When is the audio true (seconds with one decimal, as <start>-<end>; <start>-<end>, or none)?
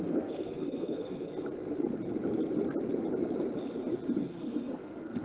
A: 1.3-4.2